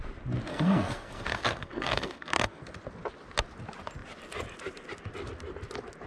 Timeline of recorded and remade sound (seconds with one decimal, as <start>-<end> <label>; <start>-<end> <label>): 0.0-0.5 recorded; 0.5-2.6 remade; 2.6-6.1 recorded